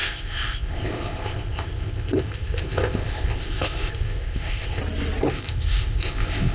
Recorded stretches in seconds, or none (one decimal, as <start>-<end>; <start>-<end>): 4.8-5.3